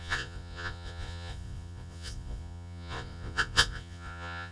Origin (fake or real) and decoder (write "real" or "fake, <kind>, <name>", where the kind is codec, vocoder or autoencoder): fake, vocoder, Vocos